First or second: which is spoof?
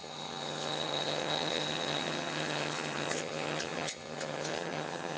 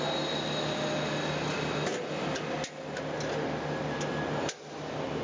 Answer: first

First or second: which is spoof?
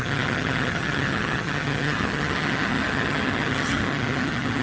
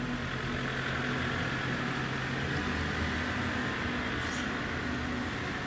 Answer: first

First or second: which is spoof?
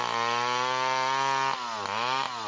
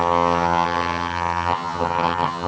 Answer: second